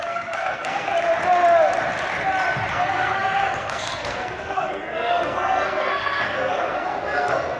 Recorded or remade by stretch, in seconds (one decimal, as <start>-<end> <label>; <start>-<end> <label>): 0.0-0.9 remade; 0.9-2.7 recorded; 2.7-7.6 remade